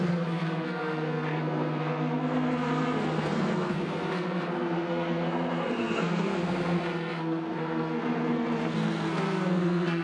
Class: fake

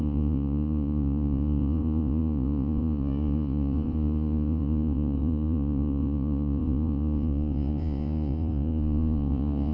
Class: fake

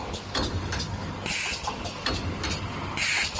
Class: real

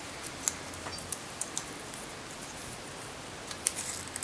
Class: real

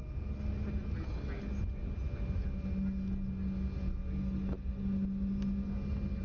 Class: real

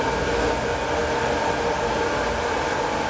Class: real